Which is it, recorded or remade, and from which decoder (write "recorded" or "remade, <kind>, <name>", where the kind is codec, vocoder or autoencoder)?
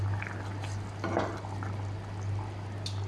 recorded